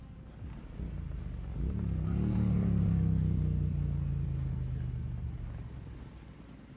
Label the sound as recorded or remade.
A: recorded